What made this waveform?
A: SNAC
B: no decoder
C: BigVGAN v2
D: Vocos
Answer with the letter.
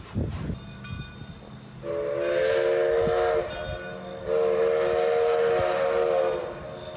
B